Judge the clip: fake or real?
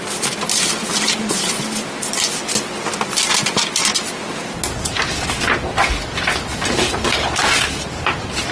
real